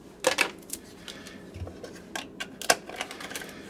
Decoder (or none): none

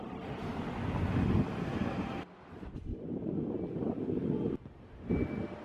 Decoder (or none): none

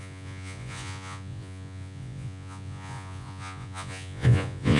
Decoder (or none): vocoder, Vocos